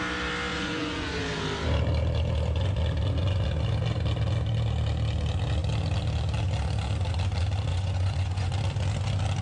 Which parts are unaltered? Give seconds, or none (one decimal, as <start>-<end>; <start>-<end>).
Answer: 0.0-0.5; 1.2-7.7; 8.5-9.4